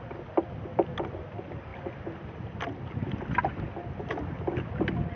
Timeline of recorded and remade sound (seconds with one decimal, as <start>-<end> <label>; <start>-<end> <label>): 0.0-5.2 recorded